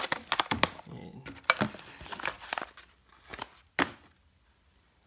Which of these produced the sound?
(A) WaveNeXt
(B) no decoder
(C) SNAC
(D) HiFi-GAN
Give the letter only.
B